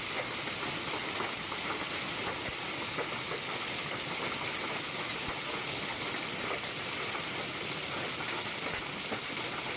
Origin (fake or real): real